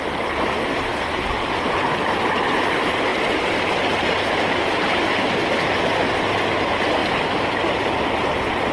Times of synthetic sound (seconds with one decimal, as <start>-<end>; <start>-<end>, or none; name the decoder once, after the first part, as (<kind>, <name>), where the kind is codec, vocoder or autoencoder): none